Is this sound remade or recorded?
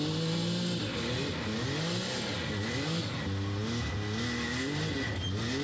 recorded